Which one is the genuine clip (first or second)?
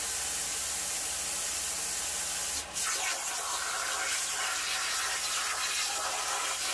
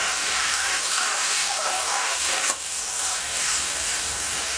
first